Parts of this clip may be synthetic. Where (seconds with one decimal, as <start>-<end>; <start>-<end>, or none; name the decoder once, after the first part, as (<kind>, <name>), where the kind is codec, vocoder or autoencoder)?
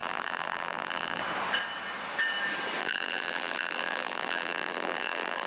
0.0-1.2 (vocoder, BigVGAN v2); 2.8-5.5